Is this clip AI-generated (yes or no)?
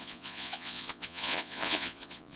yes